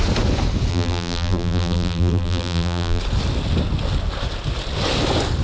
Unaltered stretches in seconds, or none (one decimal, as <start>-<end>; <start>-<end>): 0.0-0.7; 3.0-5.4